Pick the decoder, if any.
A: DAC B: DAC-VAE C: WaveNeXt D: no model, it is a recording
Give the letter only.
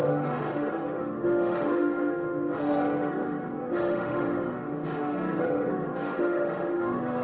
B